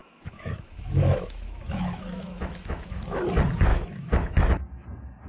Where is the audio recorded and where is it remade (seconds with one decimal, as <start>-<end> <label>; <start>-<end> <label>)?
0.0-3.2 remade; 3.2-3.7 recorded; 3.7-4.5 remade; 4.5-5.3 recorded